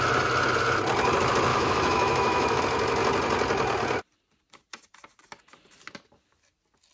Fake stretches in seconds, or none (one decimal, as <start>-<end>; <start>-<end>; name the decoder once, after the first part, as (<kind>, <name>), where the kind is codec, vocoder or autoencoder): 1.5-2.6 (autoencoder, DAC-VAE)